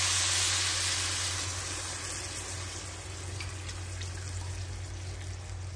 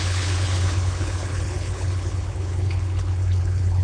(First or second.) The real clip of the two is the first